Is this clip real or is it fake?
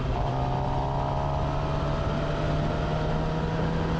real